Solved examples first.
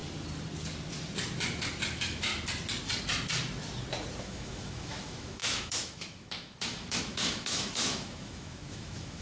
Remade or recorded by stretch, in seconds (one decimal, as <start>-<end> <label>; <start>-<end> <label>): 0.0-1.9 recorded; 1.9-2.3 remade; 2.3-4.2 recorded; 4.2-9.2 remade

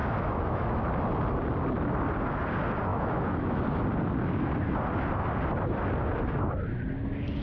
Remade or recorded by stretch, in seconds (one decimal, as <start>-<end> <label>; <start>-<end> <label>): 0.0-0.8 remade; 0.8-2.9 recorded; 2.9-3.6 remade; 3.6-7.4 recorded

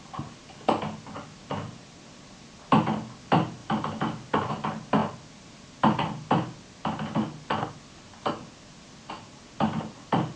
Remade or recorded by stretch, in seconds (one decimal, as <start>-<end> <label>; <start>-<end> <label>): 0.0-10.4 recorded

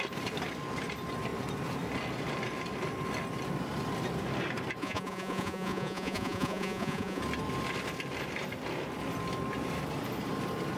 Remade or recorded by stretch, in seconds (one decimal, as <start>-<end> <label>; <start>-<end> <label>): 0.0-4.8 recorded; 4.8-7.2 remade; 7.2-10.8 recorded

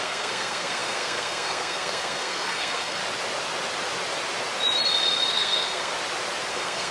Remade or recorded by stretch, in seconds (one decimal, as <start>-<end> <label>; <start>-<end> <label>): 0.0-3.0 remade; 3.0-5.3 recorded; 5.3-5.9 remade; 5.9-6.5 recorded; 6.5-6.9 remade